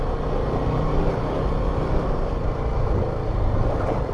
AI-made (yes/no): no